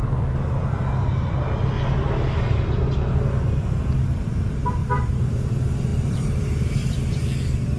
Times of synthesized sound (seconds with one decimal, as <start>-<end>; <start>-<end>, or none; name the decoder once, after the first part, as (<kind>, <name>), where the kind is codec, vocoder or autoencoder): 4.8-5.5 (vocoder, BigVGAN v2); 5.9-7.2